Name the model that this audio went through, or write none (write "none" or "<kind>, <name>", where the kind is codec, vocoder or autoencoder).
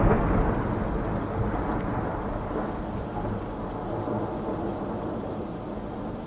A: none